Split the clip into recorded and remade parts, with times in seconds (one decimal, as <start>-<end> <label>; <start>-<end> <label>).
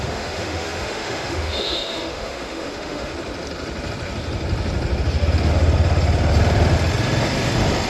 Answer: 0.0-3.1 remade; 3.1-7.9 recorded